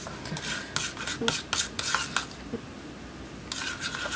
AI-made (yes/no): no